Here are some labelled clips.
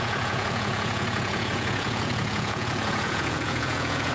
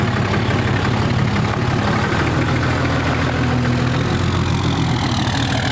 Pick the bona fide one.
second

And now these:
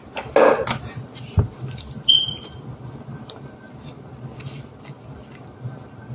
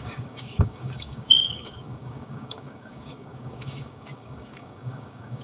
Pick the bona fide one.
first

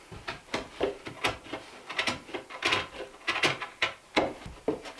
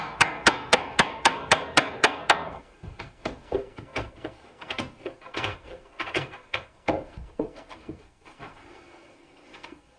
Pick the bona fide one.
first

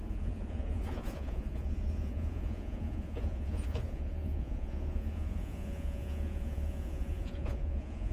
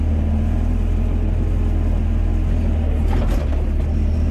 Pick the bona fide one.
second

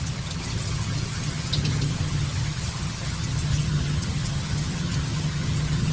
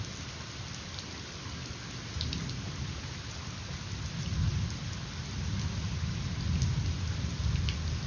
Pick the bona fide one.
second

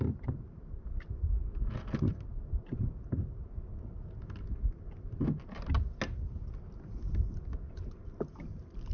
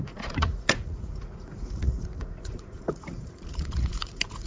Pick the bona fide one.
first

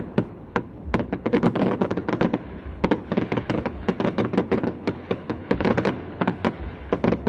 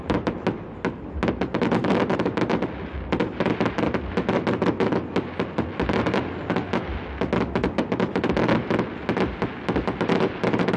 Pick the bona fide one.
second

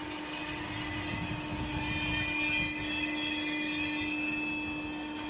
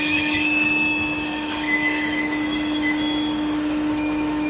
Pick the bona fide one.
first